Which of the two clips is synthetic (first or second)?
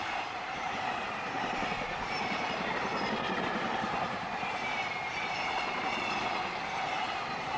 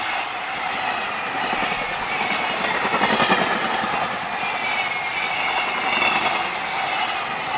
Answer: first